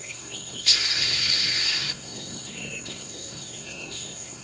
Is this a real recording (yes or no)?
no